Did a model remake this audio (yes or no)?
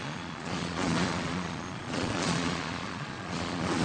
yes